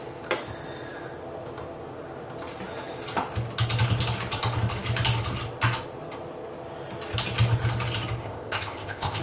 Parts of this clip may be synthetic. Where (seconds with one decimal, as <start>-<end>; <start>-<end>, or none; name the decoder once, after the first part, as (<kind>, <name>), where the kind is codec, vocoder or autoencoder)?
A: 8.2-9.2 (codec, ZipCodec)